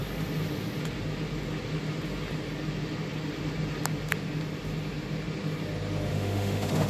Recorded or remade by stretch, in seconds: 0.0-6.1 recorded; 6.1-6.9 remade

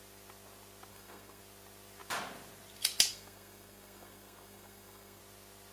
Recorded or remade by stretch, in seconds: 0.0-0.9 recorded; 0.9-1.4 remade; 1.4-3.1 recorded; 3.1-5.2 remade; 5.2-5.7 recorded

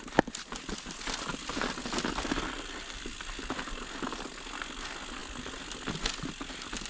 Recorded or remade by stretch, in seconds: 0.0-6.9 recorded

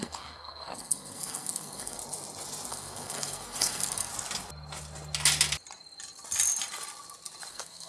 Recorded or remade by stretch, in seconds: 0.0-2.0 remade; 2.0-2.7 recorded; 2.7-4.1 remade; 4.1-7.5 recorded; 7.5-7.9 remade

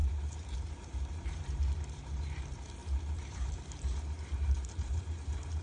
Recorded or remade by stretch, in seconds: 0.0-5.6 remade

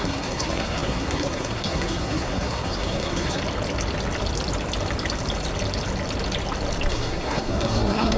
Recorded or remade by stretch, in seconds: 0.0-3.4 remade; 3.4-6.9 recorded; 6.9-8.2 remade